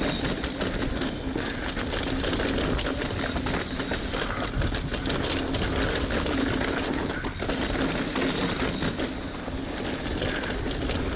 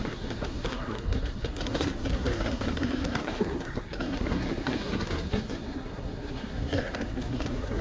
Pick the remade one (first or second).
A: second